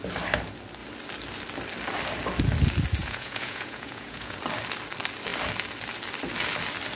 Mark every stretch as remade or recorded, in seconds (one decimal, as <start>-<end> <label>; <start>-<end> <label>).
0.0-3.0 recorded; 3.0-4.4 remade; 4.4-7.0 recorded